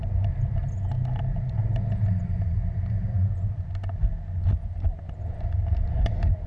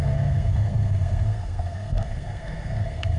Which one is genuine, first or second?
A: first